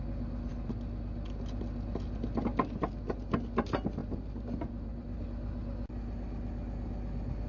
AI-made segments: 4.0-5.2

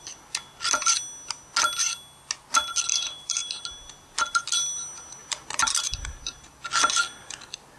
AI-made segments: 2.9-3.5; 5.2-6.5

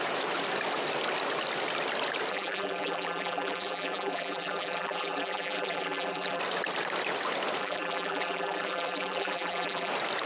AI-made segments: 2.3-6.4; 7.6-9.9